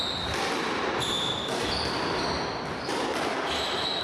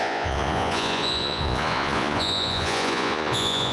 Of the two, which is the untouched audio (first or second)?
first